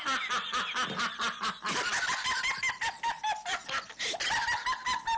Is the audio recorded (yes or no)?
yes